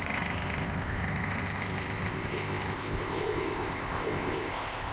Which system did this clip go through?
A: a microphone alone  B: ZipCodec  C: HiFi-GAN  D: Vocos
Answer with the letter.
B